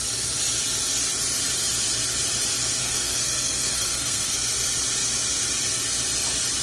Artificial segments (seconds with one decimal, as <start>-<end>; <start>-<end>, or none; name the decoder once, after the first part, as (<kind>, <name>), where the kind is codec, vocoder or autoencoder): 2.8-4.5 (codec, SNAC)